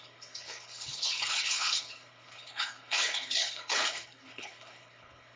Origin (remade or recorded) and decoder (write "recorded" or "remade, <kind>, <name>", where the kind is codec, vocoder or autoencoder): remade, codec, HILCodec